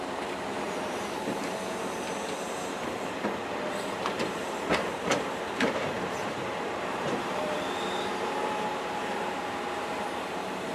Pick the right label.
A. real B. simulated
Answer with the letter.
B